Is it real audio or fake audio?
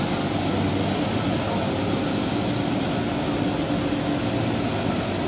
real